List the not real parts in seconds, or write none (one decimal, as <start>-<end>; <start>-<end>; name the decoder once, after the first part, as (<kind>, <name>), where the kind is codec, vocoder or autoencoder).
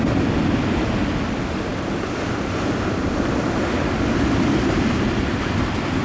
none